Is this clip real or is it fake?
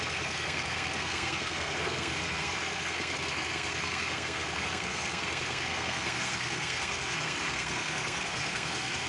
fake